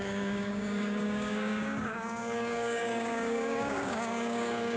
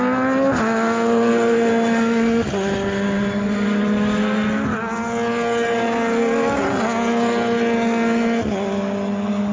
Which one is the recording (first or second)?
second